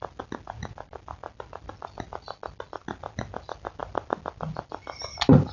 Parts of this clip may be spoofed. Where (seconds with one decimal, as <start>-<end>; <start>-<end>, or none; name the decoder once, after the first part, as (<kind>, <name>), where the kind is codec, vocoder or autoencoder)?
none